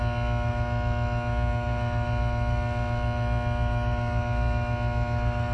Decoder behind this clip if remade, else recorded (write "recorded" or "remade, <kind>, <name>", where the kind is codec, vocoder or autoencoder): remade, autoencoder, DAC-VAE